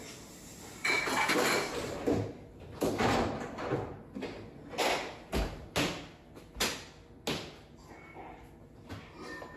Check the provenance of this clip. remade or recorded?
recorded